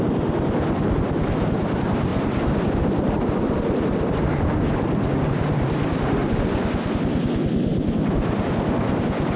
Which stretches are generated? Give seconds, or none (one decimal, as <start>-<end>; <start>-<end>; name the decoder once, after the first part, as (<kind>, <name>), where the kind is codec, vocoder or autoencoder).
2.1-5.3 (vocoder, BigVGAN v2); 6.2-6.7; 7.7-8.5